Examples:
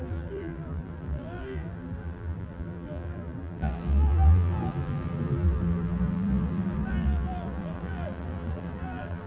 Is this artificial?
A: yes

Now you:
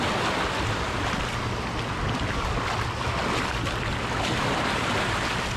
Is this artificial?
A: no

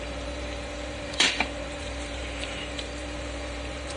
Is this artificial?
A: yes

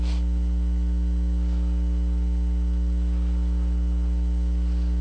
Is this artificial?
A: no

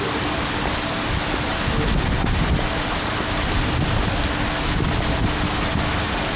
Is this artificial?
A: no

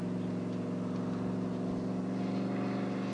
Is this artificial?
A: no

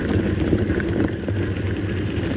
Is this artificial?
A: no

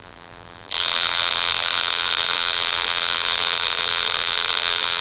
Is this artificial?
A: yes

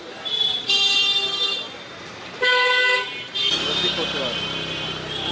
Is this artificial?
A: yes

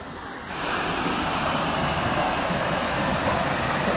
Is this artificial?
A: no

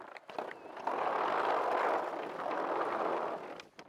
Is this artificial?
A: no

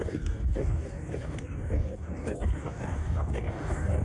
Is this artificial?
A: yes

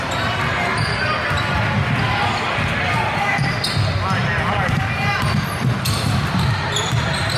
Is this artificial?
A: no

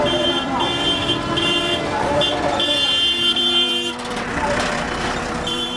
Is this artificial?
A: yes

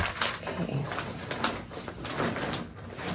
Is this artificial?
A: no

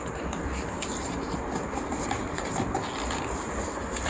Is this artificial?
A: no